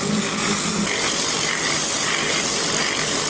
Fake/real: real